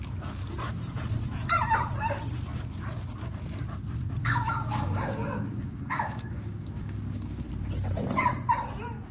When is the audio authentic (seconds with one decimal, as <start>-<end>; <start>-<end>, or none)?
0.0-4.2; 7.5-9.1